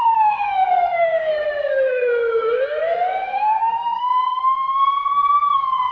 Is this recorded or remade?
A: remade